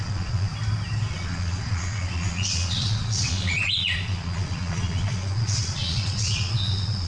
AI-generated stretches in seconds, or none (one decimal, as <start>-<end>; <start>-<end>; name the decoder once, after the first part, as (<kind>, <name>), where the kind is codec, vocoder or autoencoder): 0.0-0.5 (vocoder, Vocos); 1.1-7.1